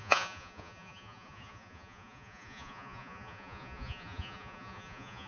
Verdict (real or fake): fake